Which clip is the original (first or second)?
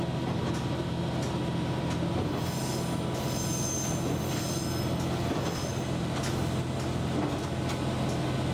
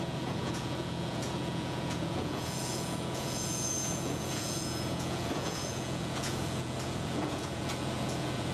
first